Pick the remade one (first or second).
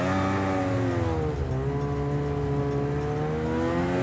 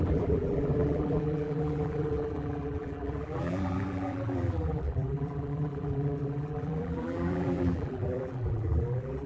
second